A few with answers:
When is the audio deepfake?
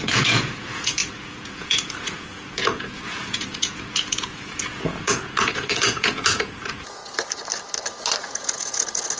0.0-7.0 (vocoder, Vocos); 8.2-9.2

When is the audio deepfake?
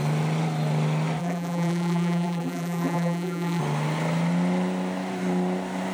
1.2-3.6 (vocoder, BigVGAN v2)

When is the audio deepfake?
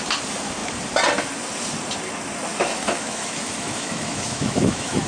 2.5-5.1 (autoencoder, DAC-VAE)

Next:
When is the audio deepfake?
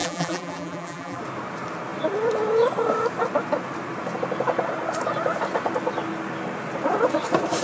0.0-1.2 (vocoder, BigVGAN v2)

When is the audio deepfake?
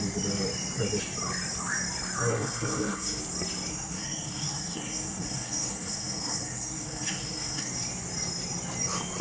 2.3-3.2 (codec, SNAC); 3.7-7.7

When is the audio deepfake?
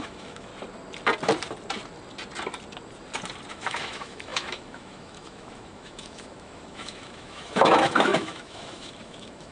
0.0-0.5 (autoencoder, DAC-VAE); 3.5-9.5